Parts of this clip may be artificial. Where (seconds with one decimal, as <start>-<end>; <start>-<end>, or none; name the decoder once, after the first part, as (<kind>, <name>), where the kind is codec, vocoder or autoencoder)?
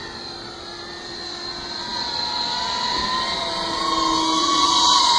4.4-5.2 (vocoder, Vocos)